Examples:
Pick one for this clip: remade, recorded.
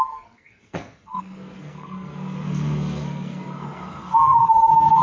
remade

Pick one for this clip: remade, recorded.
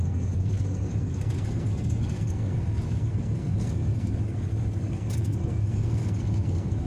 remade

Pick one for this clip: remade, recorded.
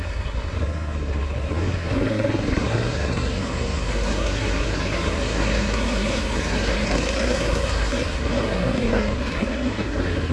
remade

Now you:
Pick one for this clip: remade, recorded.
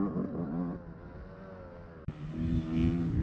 recorded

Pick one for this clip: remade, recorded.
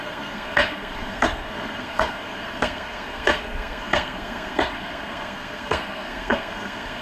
remade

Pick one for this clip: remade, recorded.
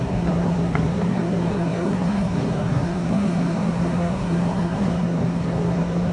remade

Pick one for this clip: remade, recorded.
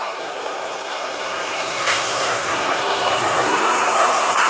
remade